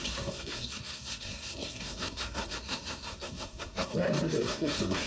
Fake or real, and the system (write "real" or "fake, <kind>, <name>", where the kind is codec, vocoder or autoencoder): fake, codec, SNAC